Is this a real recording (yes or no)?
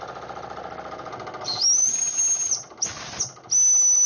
yes